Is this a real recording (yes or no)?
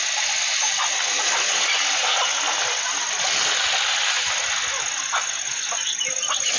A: yes